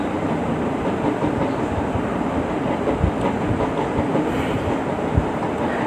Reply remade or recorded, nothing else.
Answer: recorded